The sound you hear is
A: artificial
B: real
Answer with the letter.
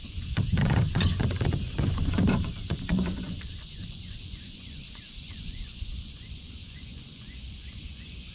A